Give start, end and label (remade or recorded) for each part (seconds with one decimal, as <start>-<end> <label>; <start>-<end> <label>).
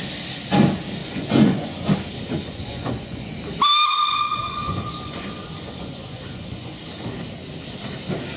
0.0-1.0 recorded; 1.0-1.9 remade; 1.9-2.4 recorded; 2.4-3.3 remade; 3.3-4.0 recorded; 4.0-6.8 remade; 6.8-8.4 recorded